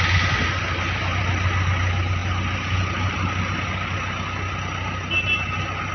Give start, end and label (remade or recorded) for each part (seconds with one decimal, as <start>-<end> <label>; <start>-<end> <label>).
0.0-5.9 recorded